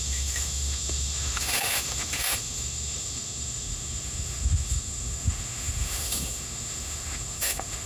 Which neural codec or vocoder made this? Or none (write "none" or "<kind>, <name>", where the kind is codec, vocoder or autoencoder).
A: autoencoder, DAC-VAE